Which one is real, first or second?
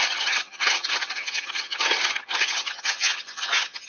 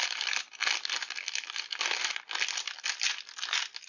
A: second